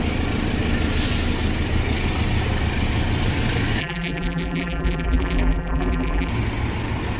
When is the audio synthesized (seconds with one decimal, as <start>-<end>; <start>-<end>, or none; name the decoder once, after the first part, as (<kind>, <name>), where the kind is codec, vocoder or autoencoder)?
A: 3.8-6.3 (vocoder, BigVGAN v2)